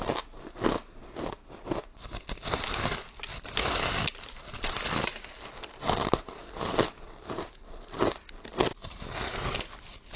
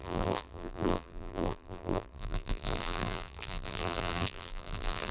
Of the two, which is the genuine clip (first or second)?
first